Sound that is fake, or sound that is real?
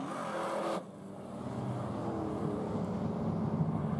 real